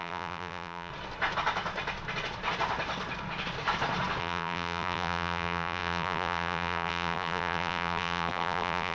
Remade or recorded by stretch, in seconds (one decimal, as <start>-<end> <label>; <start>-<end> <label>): 0.0-0.9 remade; 0.9-4.2 recorded; 4.2-8.9 remade